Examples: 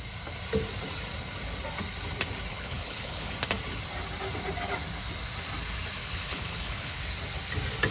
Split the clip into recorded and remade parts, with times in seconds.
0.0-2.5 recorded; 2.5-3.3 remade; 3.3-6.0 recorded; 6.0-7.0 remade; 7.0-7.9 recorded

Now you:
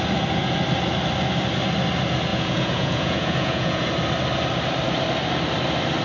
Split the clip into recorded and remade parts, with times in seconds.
0.0-2.3 recorded; 2.3-3.9 remade; 3.9-6.0 recorded

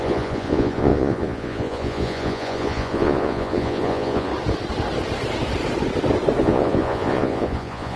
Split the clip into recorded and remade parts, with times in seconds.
0.0-4.3 remade; 4.3-6.4 recorded; 6.4-8.0 remade

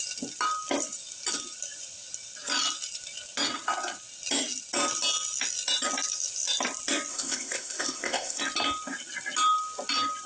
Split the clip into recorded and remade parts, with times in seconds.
0.0-7.1 recorded; 7.1-8.4 remade; 8.4-10.3 recorded

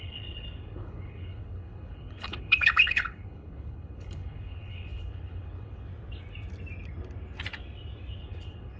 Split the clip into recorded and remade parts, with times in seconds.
0.0-5.9 remade; 5.9-8.2 recorded; 8.2-8.8 remade